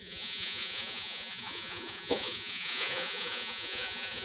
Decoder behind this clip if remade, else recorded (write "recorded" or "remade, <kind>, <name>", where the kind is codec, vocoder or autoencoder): remade, vocoder, Vocos